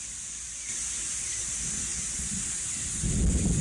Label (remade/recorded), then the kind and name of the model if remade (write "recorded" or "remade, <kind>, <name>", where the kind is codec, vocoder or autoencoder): recorded